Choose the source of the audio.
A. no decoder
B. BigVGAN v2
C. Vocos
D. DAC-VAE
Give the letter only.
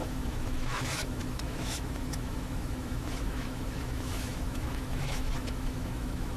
D